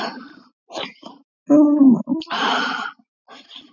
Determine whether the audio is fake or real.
real